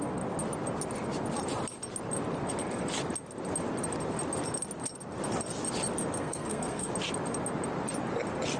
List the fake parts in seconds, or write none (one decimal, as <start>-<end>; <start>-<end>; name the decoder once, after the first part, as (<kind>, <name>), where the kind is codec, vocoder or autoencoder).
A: 6.2-6.9 (codec, SNAC)